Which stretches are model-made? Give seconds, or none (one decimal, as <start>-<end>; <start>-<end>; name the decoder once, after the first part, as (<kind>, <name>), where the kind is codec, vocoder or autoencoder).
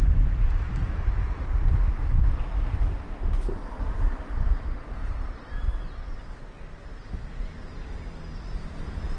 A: none